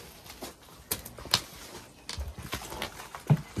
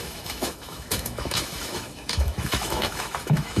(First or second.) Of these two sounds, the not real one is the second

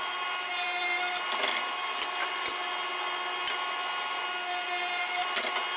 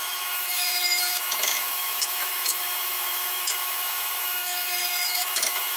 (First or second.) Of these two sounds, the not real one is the second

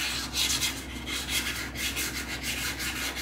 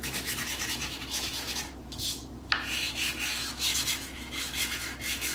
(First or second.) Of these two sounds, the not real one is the second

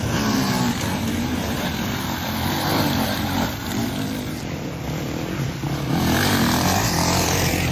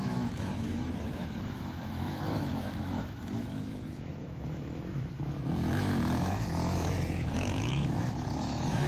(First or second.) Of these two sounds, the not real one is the second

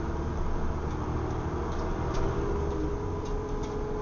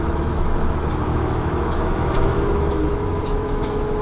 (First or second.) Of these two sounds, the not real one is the second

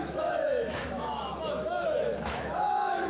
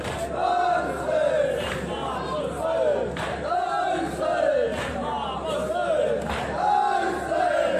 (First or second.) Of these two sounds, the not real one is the first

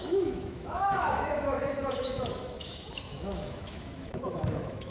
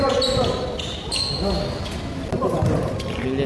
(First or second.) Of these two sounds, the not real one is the first